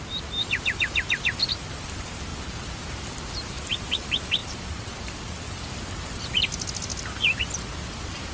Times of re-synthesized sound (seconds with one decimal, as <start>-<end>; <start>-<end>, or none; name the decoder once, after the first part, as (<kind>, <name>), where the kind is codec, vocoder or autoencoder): 2.3-2.8 (vocoder, BigVGAN v2); 4.4-5.5